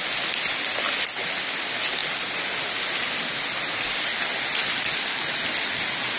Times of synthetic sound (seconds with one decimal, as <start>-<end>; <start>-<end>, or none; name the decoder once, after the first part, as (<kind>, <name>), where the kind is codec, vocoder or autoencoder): none